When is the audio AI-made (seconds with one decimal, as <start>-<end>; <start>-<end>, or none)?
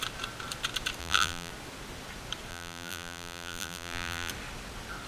1.0-1.5; 2.5-4.3